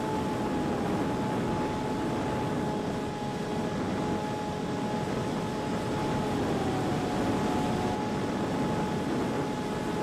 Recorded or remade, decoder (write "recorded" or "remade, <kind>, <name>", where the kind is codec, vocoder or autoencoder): recorded